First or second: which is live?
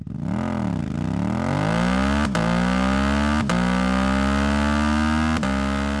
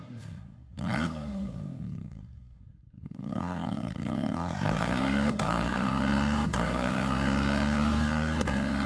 first